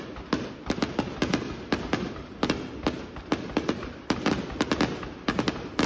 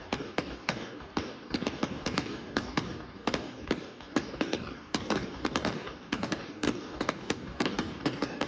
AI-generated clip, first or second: second